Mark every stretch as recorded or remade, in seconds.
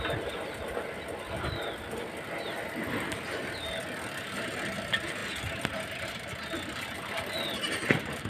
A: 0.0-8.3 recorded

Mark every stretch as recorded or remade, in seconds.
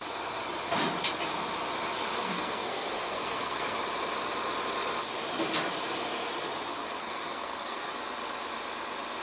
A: 0.0-2.2 recorded; 2.2-3.8 remade; 3.8-7.0 recorded; 7.0-7.9 remade; 7.9-9.2 recorded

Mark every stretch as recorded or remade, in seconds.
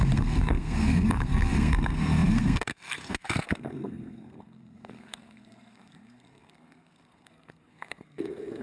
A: 0.0-8.6 remade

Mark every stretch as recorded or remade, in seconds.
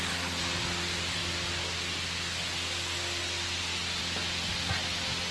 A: 0.0-5.3 recorded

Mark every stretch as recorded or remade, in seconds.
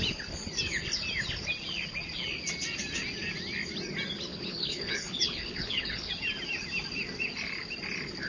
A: 0.0-4.3 recorded; 4.3-6.1 remade; 6.1-8.3 recorded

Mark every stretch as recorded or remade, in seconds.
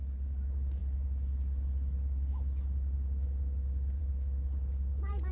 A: 0.0-5.3 recorded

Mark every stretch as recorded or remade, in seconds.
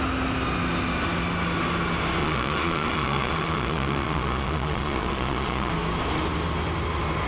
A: 0.0-2.2 recorded; 2.2-5.7 remade; 5.7-7.3 recorded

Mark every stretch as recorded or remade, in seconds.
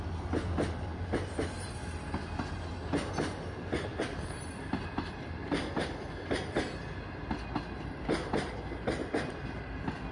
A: 0.0-3.9 recorded; 3.9-4.5 remade; 4.5-9.0 recorded; 9.0-10.1 remade